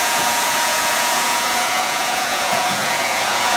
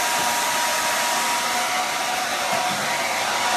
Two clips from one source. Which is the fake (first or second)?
first